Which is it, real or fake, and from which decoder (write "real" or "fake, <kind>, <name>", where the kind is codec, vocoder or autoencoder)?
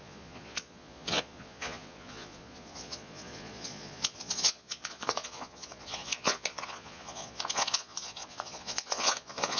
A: fake, vocoder, Vocos